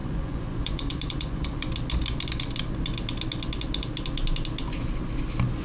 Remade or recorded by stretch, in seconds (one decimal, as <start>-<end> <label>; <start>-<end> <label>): 0.0-1.7 remade; 1.7-5.6 recorded